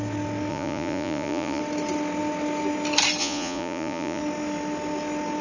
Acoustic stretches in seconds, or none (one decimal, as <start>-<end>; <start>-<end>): 0.0-0.5; 1.6-3.2; 4.2-5.4